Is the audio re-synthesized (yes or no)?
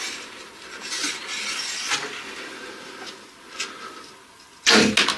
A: no